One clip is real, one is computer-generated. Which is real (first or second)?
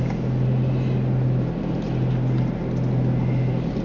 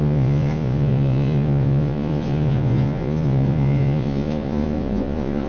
first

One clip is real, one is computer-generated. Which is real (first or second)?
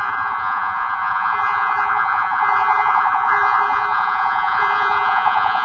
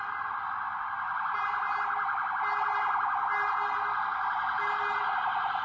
second